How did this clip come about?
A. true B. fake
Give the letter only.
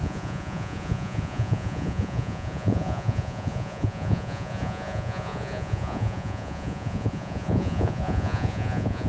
B